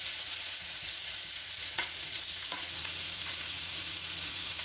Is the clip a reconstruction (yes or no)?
yes